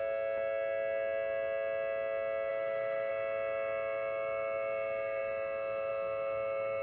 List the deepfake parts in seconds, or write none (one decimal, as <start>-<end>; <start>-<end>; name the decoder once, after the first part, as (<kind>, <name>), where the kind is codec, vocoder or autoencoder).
2.5-3.1 (autoencoder, DAC-VAE)